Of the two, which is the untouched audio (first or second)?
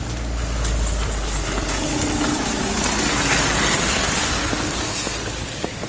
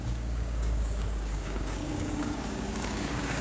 first